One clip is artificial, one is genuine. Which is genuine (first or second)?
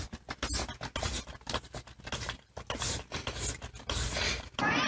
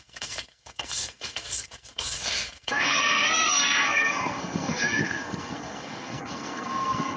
first